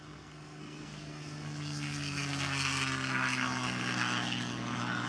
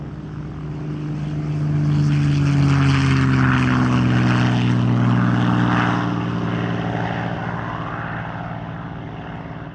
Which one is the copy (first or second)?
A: first